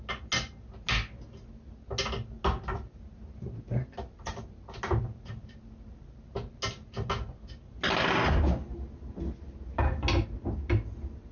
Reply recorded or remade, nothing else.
recorded